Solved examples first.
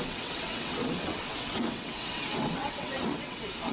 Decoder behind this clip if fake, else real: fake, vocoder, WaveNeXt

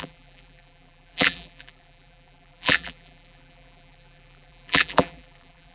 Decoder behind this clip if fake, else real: fake, vocoder, BigVGAN v2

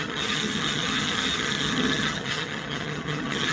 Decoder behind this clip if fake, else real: fake, vocoder, HiFi-GAN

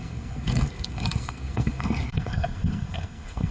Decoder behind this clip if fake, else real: fake, codec, SNAC